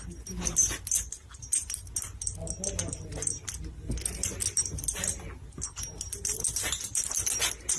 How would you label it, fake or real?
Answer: real